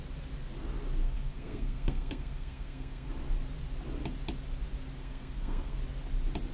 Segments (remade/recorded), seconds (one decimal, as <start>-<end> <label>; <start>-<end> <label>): 0.0-1.0 recorded; 1.0-3.1 remade; 3.1-5.0 recorded; 5.0-5.8 remade; 5.8-6.5 recorded